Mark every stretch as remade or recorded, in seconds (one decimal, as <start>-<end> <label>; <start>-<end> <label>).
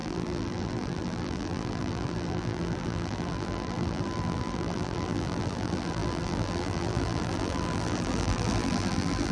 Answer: 0.0-9.3 remade